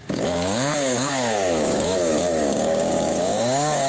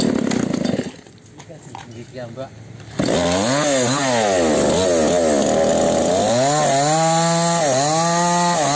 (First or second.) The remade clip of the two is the first